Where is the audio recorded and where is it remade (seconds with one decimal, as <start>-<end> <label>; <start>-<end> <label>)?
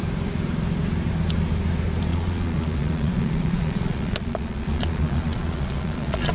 0.0-2.1 recorded; 2.1-6.3 remade